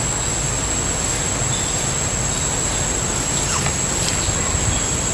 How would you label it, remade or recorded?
recorded